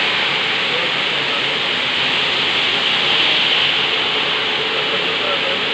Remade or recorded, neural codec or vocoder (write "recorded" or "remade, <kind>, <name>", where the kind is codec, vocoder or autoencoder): recorded